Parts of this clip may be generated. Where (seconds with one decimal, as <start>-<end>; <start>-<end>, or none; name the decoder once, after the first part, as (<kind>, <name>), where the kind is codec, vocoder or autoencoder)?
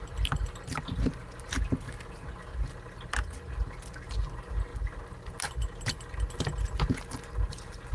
none